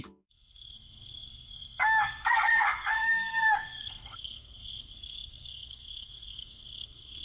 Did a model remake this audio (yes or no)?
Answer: yes